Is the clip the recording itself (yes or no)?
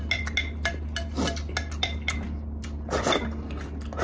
yes